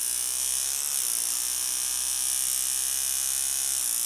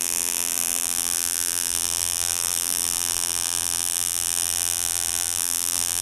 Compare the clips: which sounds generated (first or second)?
second